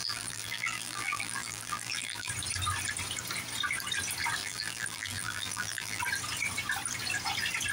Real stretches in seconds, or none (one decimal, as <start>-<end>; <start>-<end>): 2.3-4.4; 6.0-7.7